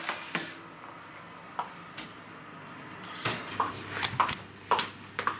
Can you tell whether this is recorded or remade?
recorded